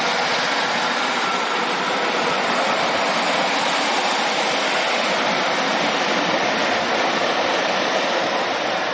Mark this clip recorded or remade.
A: recorded